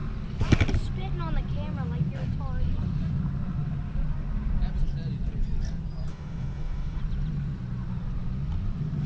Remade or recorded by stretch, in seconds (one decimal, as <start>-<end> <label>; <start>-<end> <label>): 0.0-6.1 recorded; 6.1-7.0 remade; 7.0-9.1 recorded